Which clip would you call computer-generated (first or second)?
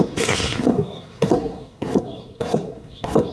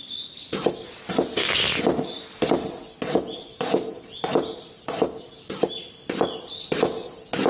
first